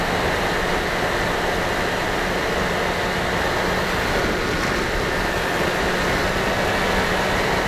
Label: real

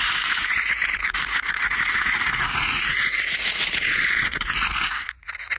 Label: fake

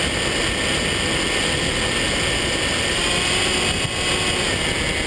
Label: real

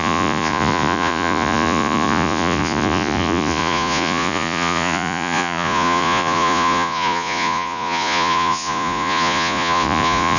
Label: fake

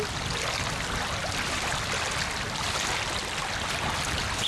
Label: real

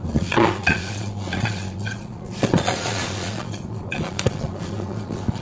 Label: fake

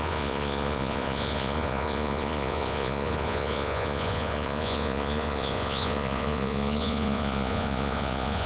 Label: fake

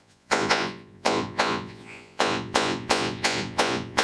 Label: fake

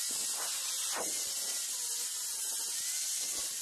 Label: real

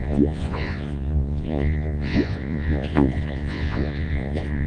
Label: fake